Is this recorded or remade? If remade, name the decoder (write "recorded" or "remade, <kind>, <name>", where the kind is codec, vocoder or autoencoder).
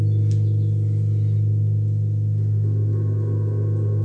recorded